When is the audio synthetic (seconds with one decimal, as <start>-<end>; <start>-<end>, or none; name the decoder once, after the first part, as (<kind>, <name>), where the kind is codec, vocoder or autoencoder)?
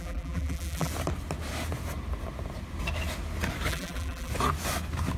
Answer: 0.0-0.9 (vocoder, BigVGAN v2); 3.7-4.3